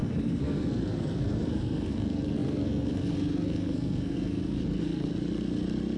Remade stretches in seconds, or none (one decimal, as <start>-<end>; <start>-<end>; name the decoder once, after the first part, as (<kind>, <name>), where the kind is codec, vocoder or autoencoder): 0.0-5.1 (codec, SNAC)